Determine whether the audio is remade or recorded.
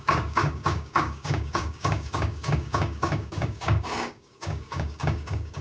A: remade